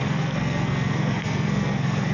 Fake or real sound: fake